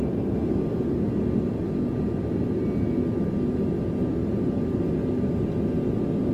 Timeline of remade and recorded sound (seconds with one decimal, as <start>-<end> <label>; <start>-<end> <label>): 0.0-6.3 recorded